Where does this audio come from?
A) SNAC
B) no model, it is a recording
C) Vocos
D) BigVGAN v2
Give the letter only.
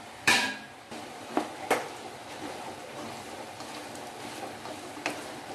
D